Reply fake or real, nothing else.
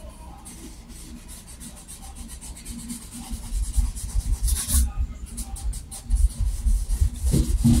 real